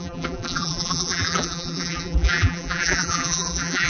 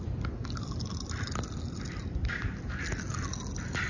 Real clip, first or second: second